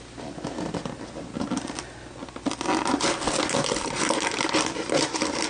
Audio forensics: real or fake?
real